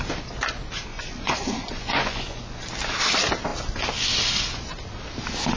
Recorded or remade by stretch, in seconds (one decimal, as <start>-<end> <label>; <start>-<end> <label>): 0.0-0.9 recorded; 0.9-2.7 remade; 2.7-5.6 recorded